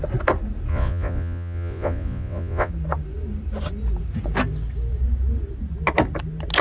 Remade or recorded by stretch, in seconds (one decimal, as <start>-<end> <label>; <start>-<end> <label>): 0.0-0.7 recorded; 0.7-2.7 remade; 2.7-6.6 recorded